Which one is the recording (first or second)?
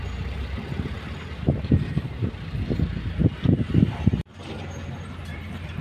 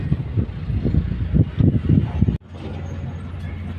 second